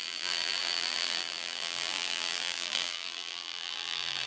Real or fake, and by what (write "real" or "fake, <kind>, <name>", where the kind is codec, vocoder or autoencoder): fake, vocoder, BigVGAN v2